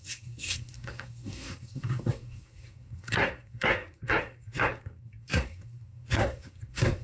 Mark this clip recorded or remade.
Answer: remade